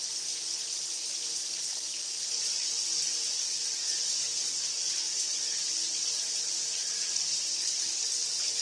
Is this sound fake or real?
real